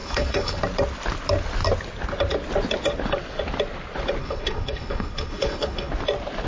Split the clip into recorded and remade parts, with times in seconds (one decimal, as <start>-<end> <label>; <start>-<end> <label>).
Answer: 0.0-0.6 remade; 0.6-4.2 recorded; 4.2-5.9 remade; 5.9-6.5 recorded